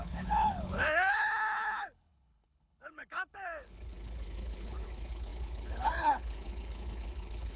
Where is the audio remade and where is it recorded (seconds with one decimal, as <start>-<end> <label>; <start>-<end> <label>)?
0.0-7.6 remade